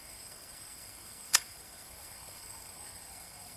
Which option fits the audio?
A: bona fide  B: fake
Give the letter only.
B